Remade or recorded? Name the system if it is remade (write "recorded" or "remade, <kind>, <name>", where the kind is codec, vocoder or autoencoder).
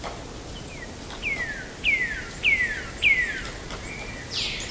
recorded